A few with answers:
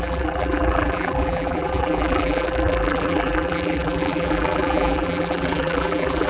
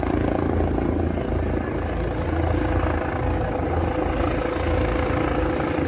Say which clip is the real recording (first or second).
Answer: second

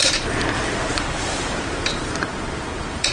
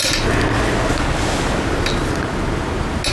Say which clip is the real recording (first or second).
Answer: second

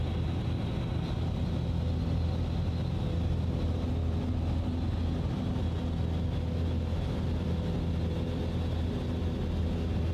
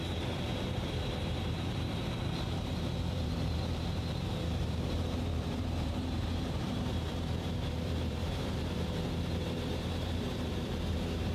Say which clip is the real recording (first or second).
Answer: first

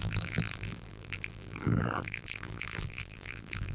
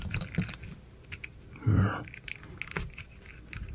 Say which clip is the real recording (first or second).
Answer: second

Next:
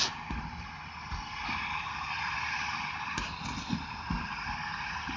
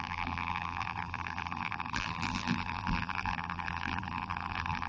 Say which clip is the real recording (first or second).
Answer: first